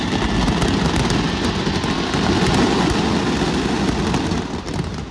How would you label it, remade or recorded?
recorded